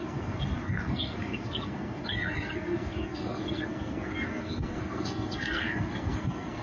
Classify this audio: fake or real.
fake